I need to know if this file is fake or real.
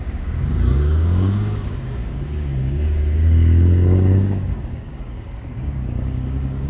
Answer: fake